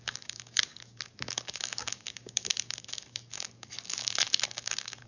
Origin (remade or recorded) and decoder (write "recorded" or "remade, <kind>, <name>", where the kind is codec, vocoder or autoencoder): remade, codec, DAC